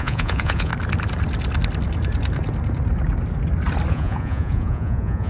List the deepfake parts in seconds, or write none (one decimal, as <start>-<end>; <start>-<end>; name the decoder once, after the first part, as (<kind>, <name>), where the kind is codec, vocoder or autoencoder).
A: 0.0-0.7 (vocoder, Vocos); 3.9-5.3